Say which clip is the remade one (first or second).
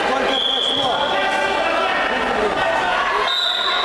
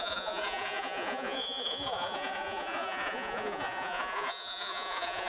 second